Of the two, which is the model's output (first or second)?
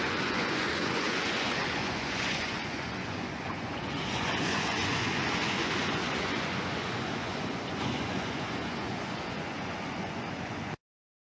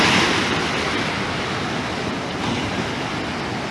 first